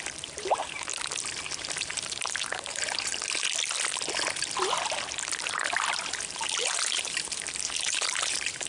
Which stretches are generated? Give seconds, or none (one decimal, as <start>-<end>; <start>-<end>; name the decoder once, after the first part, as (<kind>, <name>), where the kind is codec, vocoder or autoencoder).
0.0-0.9 (vocoder, BigVGAN v2); 1.8-3.1; 6.6-8.7